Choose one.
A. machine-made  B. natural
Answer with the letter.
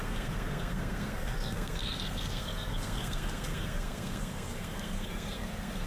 A